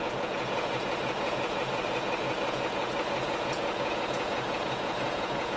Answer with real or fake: fake